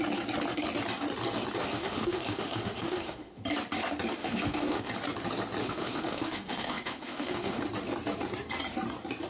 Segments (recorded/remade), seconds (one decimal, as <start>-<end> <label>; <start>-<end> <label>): 0.0-1.6 recorded; 1.6-3.4 remade; 3.4-4.2 recorded; 4.2-4.9 remade; 4.9-5.6 recorded; 5.6-7.6 remade; 7.6-9.3 recorded